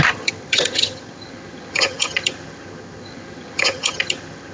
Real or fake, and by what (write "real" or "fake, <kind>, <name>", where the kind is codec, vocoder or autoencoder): fake, vocoder, HiFi-GAN